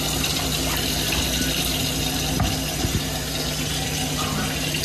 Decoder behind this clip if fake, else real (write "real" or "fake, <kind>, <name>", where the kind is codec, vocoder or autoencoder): real